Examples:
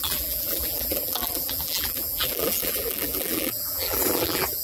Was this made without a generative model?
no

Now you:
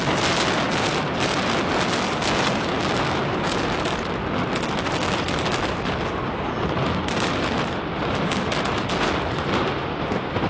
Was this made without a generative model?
yes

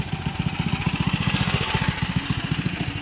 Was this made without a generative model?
yes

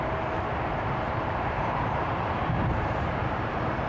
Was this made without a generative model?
no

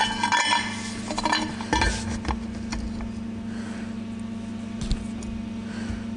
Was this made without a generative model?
yes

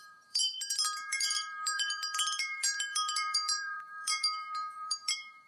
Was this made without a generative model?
no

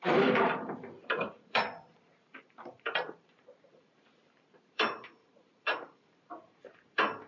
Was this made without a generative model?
no